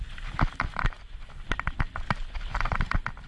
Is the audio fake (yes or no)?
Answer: no